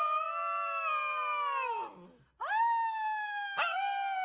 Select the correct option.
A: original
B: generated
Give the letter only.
A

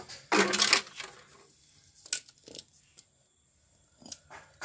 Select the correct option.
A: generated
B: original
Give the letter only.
B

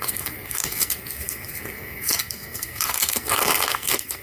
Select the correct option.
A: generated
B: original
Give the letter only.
A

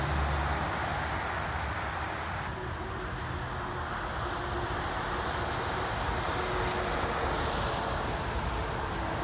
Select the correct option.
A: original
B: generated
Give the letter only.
A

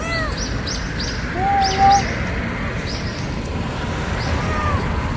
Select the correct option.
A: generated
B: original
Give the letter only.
B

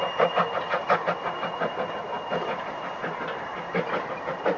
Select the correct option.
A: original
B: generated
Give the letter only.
A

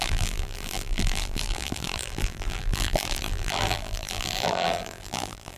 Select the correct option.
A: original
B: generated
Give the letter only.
B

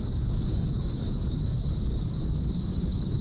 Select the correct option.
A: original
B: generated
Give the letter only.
B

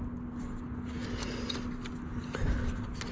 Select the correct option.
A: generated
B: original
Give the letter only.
B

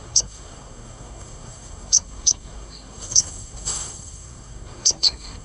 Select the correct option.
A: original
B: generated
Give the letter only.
B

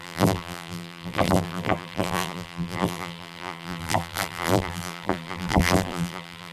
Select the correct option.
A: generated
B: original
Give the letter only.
A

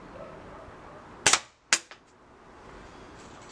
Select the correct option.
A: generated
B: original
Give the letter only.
B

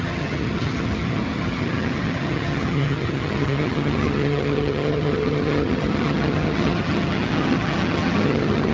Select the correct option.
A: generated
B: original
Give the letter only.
A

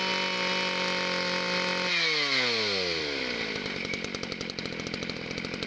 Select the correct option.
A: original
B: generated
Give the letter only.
A